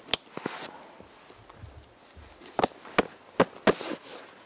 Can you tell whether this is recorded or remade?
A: recorded